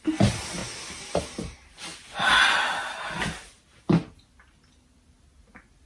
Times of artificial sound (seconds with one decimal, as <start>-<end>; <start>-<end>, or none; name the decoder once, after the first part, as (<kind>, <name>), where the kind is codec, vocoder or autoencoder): none